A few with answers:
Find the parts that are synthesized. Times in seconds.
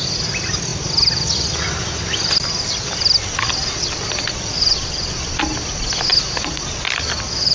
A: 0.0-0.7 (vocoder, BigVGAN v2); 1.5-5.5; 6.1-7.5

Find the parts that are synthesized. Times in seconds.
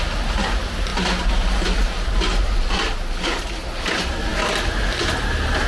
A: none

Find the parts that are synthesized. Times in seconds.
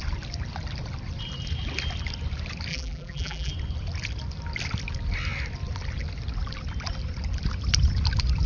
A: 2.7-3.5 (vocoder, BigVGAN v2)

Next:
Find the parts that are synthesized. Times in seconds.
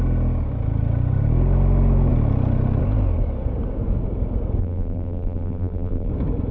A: 4.6-6.1 (vocoder, BigVGAN v2)